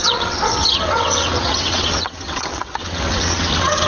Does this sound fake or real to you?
fake